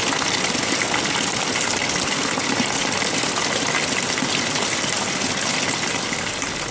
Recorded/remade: recorded